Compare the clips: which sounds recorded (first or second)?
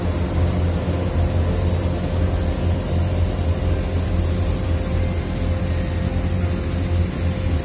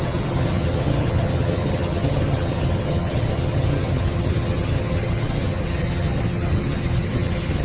first